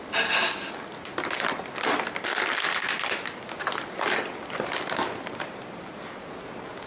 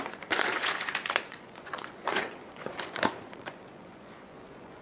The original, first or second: first